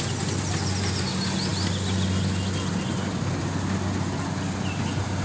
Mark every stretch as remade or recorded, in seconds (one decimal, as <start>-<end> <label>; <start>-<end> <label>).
0.0-5.2 recorded